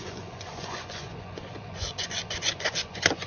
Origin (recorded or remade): remade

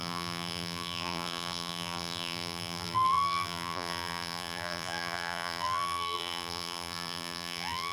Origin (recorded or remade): remade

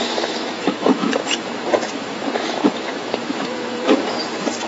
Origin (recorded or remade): remade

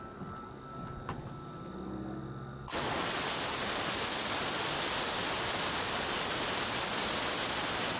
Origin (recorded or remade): recorded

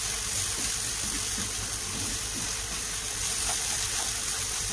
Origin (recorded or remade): recorded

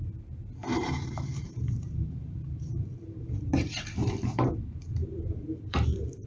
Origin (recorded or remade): remade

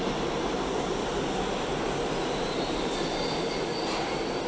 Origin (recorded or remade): recorded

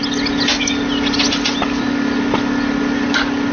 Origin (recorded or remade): recorded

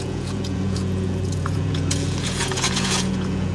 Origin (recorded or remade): remade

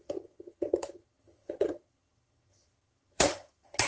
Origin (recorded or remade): remade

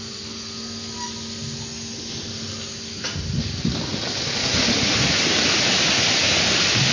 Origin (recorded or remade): recorded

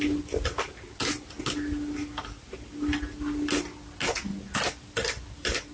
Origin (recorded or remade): recorded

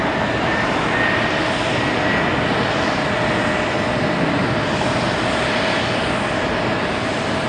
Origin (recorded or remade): recorded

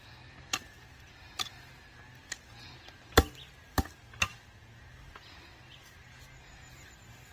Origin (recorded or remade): recorded